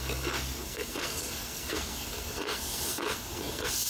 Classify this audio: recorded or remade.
remade